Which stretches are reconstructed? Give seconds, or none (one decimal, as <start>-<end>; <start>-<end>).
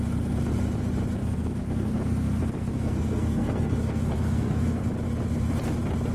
1.2-4.9